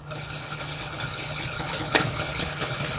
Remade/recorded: remade